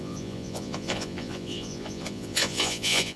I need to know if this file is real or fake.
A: fake